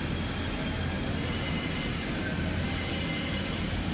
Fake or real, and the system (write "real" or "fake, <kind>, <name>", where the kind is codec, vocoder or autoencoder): real